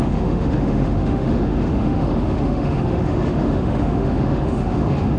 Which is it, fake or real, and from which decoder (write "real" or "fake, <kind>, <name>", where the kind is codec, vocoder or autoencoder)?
fake, autoencoder, DAC-VAE